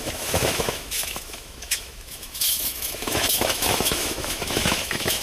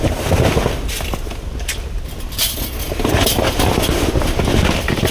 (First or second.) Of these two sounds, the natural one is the second